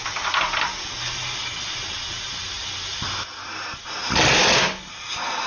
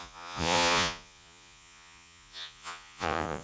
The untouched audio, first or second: first